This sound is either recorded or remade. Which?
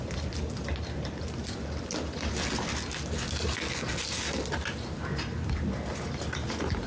recorded